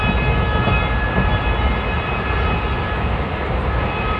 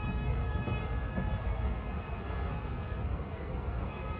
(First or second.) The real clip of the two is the first